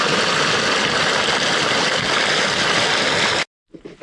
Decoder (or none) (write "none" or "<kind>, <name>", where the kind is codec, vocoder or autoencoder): none